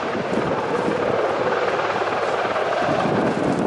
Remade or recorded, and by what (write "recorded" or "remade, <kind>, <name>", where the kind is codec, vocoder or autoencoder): recorded